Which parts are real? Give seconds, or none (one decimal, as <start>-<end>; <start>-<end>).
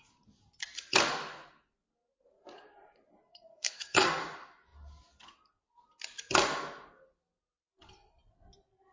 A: 0.0-3.2; 4.2-8.9